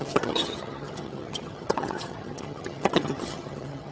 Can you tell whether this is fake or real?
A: fake